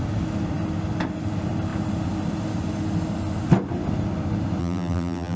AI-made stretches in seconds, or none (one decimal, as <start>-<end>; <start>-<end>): 4.6-5.4